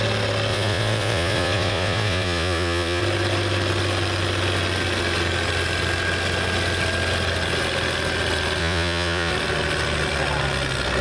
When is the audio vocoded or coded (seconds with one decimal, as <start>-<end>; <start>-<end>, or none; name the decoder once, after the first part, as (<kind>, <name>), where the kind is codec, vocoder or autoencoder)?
0.5-3.0 (vocoder, Vocos); 8.6-9.3